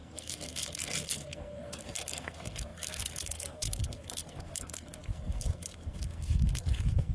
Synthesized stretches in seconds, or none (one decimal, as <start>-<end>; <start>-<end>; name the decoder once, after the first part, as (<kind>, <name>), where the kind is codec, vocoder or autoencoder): 0.0-7.1 (codec, SNAC)